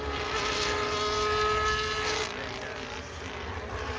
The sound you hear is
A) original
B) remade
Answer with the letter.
A